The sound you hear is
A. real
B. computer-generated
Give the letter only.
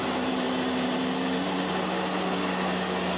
A